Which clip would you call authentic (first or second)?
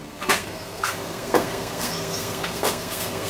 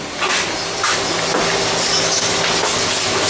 second